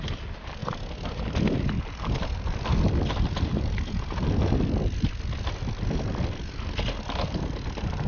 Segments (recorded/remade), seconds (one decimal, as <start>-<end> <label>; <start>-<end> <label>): 0.0-8.1 recorded